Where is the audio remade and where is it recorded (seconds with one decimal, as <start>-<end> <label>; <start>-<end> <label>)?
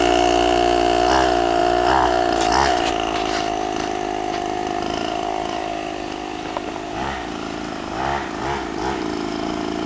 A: 0.0-4.6 recorded; 4.6-5.7 remade; 5.7-9.9 recorded